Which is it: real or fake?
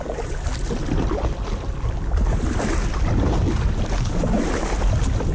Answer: real